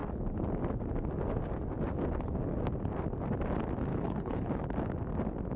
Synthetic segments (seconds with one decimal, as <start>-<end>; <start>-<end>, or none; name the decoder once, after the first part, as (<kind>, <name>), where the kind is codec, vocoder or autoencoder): 3.9-4.6 (codec, HILCodec)